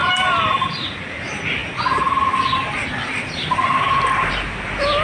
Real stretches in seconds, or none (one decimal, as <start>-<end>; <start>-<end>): 0.0-1.6; 4.3-5.0